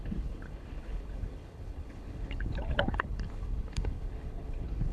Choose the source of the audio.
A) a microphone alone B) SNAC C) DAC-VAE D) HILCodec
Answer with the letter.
D